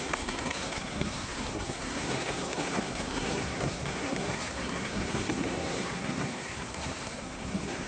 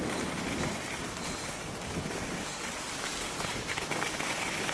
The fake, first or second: first